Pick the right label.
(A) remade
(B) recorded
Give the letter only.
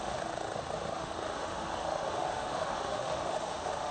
A